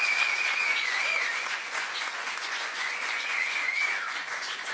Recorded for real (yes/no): no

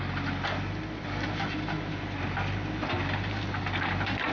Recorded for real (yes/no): yes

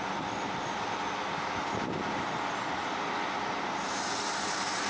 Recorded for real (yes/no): yes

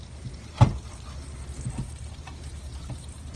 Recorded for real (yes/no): yes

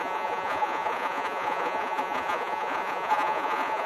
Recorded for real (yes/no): no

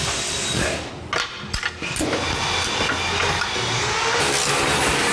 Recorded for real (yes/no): yes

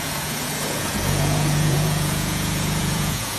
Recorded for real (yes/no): no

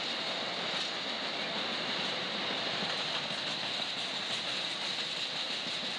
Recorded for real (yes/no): yes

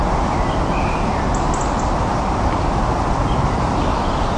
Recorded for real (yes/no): yes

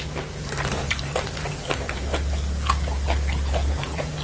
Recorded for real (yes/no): yes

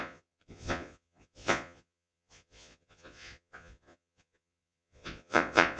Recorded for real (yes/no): no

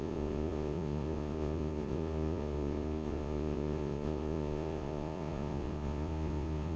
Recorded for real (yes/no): no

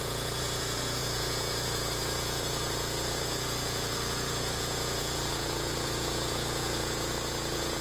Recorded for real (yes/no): no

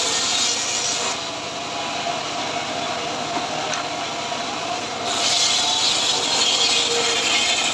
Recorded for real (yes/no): yes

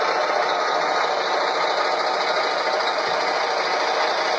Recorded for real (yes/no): yes